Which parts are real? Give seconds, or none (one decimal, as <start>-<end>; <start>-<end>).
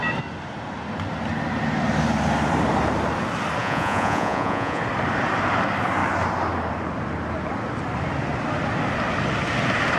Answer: 0.0-3.6; 4.8-10.0